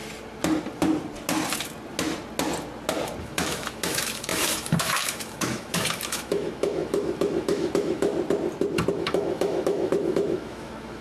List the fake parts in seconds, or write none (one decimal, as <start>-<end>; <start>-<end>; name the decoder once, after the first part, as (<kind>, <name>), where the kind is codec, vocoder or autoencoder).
3.2-8.1 (autoencoder, DAC-VAE); 8.9-11.0